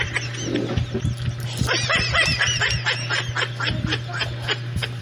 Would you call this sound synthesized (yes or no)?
no